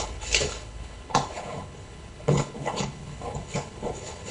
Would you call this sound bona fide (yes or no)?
no